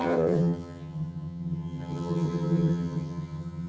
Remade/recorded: remade